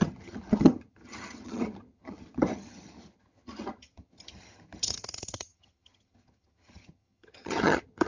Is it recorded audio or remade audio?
remade